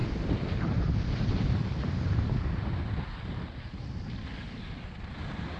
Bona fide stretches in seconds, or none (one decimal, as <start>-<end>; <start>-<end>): 2.3-5.6